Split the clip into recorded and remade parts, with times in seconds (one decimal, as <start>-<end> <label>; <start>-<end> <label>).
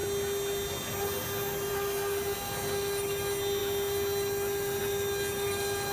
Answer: 0.0-5.9 recorded